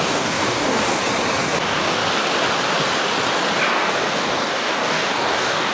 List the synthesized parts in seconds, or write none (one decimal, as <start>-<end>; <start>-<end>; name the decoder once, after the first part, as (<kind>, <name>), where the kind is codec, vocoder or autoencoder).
0.0-1.0 (codec, DAC); 1.6-2.0; 3.7-5.7